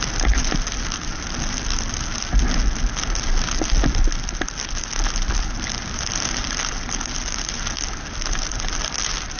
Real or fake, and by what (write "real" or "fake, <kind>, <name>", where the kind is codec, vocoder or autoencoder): real